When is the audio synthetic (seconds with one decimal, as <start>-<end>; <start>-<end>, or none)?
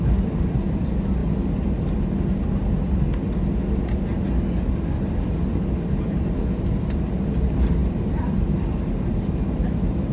none